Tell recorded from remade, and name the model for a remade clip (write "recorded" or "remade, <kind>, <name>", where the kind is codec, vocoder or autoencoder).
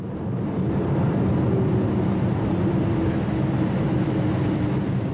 recorded